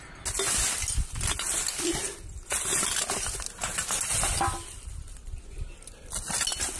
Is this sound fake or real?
real